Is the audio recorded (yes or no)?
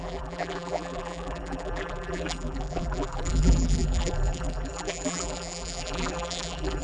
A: no